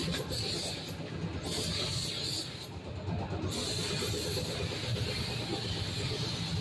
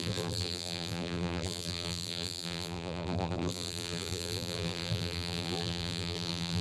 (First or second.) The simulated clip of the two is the second